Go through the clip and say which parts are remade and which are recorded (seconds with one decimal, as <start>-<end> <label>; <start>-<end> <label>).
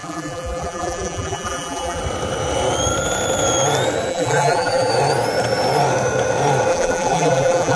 0.0-2.0 remade; 2.0-4.1 recorded; 4.1-4.9 remade; 4.9-6.7 recorded; 6.7-7.8 remade